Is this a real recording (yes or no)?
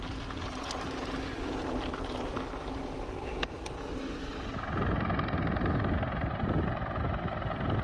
yes